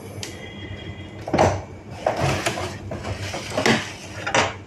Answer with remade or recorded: recorded